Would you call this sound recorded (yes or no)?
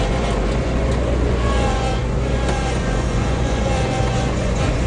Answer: no